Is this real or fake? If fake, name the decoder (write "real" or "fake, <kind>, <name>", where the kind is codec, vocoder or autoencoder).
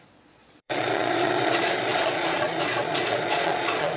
fake, vocoder, Vocos